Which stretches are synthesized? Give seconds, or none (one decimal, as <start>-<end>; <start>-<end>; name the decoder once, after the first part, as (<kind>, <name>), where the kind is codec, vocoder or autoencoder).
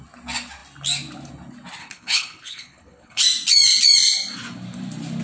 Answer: 1.8-3.2 (codec, HILCodec)